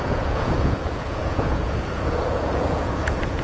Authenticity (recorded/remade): remade